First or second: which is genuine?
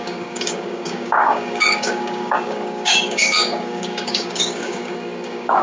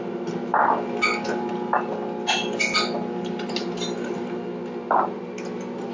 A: second